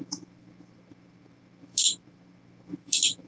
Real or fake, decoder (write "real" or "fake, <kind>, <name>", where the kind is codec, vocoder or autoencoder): fake, autoencoder, DAC-VAE